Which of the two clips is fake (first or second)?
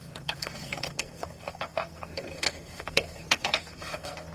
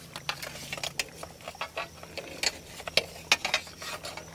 first